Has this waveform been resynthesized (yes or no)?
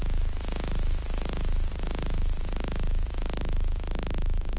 yes